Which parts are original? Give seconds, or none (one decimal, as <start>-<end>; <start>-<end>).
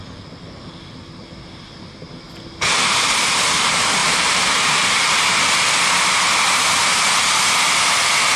0.0-4.0; 5.4-6.9; 7.5-8.4